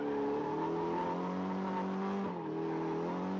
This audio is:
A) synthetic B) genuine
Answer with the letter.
B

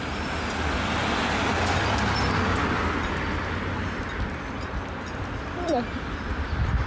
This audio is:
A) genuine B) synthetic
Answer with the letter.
A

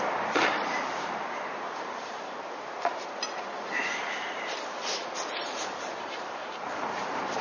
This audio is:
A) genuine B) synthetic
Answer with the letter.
B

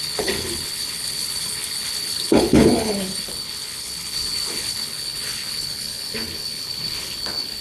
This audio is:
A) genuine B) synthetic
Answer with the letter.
B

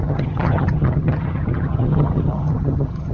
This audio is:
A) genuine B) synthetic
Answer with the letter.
B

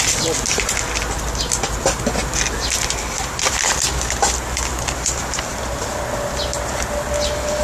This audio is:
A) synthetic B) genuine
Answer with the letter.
B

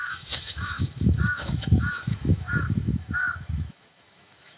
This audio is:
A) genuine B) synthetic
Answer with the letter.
B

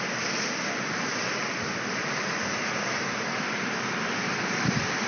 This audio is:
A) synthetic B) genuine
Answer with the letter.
B